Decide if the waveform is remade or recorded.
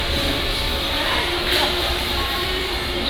remade